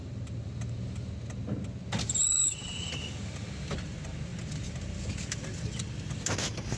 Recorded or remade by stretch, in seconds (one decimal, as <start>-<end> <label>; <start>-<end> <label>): 0.0-2.3 recorded; 2.3-2.9 remade; 2.9-6.8 recorded